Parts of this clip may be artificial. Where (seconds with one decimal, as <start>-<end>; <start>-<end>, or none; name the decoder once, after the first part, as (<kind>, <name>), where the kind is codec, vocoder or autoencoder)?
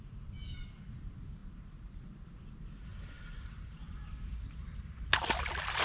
none